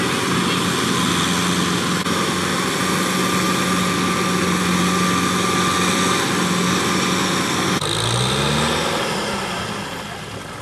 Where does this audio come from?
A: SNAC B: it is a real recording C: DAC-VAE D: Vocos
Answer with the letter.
B